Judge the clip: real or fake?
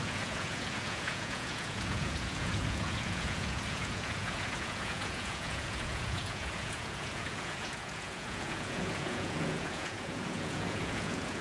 fake